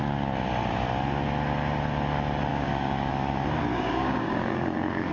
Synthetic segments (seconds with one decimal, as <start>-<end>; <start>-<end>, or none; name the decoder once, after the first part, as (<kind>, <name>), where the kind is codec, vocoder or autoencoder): 2.5-3.1 (codec, DAC); 3.6-5.1